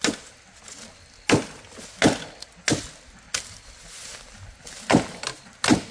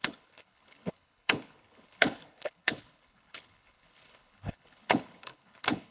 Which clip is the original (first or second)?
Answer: first